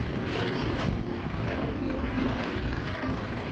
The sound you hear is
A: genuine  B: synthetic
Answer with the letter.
B